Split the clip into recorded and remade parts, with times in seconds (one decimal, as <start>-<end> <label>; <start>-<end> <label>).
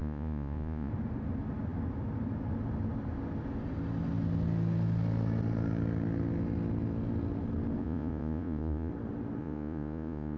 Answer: 0.0-0.9 remade; 0.9-7.8 recorded; 7.8-8.9 remade; 8.9-9.4 recorded; 9.4-10.4 remade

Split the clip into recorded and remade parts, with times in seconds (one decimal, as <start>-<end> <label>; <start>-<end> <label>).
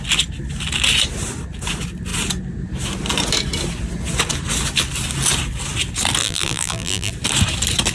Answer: 0.0-6.2 recorded; 6.2-7.1 remade; 7.1-7.9 recorded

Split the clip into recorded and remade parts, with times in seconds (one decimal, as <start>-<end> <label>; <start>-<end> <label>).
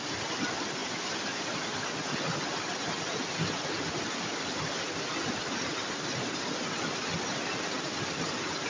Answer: 0.0-8.7 recorded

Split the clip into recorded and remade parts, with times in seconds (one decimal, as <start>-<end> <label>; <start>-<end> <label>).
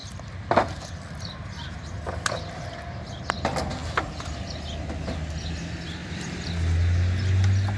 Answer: 0.0-2.6 remade; 2.6-3.8 recorded; 3.8-4.4 remade; 4.4-6.0 recorded; 6.0-6.5 remade; 6.5-7.8 recorded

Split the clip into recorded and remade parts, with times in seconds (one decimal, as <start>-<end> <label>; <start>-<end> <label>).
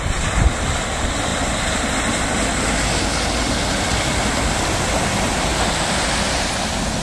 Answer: 0.0-7.0 recorded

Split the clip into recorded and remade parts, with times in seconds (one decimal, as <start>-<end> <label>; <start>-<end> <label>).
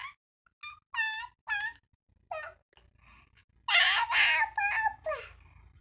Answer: 0.0-5.8 recorded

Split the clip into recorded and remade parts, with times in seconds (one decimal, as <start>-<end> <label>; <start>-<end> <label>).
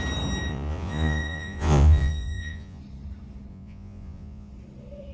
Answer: 0.0-0.5 recorded; 0.5-2.8 remade; 2.8-3.5 recorded; 3.5-4.5 remade; 4.5-5.1 recorded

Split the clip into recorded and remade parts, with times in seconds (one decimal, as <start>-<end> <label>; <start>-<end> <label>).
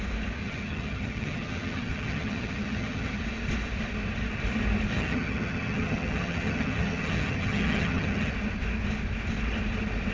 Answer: 0.0-0.4 recorded; 0.4-3.2 remade; 3.2-4.9 recorded; 4.9-8.3 remade; 8.3-10.1 recorded